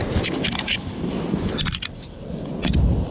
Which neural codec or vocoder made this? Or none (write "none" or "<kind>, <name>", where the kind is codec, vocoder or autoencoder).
none